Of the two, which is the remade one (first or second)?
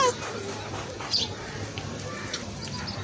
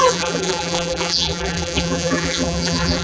second